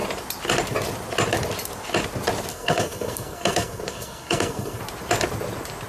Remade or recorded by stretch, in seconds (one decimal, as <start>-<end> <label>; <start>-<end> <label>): 0.0-2.5 recorded; 2.5-4.8 remade; 4.8-5.9 recorded